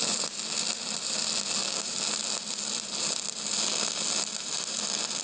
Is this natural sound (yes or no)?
yes